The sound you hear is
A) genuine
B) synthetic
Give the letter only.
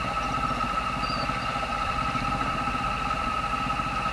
A